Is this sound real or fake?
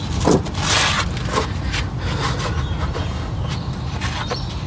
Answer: real